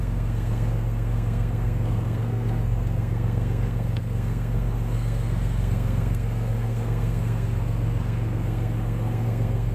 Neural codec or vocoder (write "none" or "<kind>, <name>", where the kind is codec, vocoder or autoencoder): codec, SNAC